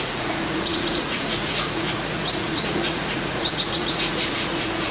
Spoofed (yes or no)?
yes